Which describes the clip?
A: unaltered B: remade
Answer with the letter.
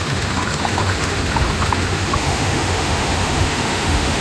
B